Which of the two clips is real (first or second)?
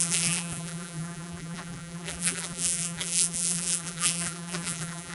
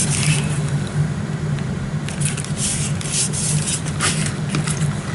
second